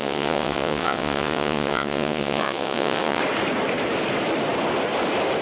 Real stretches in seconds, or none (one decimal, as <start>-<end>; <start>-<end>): 3.2-5.4